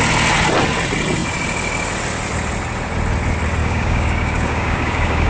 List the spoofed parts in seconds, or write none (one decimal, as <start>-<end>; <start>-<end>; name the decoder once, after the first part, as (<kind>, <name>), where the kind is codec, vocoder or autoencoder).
3.6-5.3 (codec, DAC)